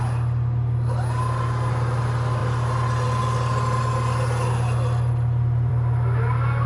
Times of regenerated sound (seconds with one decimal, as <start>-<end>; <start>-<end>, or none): none